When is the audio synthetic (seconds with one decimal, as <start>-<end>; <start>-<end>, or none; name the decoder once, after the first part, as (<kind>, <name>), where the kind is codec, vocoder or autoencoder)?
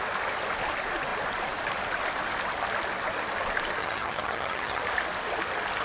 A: 3.8-4.8 (vocoder, HiFi-GAN)